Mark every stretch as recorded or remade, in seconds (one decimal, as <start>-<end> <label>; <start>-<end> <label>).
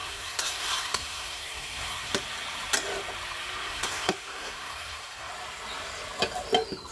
0.0-2.1 remade; 2.1-3.6 recorded; 3.6-5.3 remade; 5.3-6.9 recorded